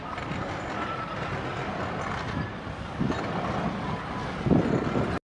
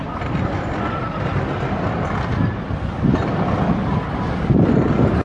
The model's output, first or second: second